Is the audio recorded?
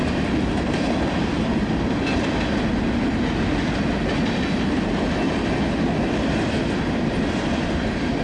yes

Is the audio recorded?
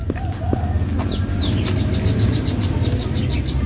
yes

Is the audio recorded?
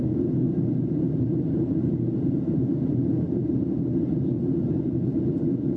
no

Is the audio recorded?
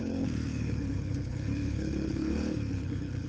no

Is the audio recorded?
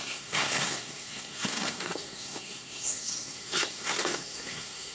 no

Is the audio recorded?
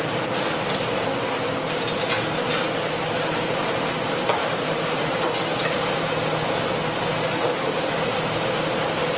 yes